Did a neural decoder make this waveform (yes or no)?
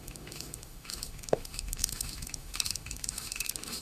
yes